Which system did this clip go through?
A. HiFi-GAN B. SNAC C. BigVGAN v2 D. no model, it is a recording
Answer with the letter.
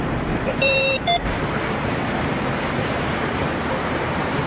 C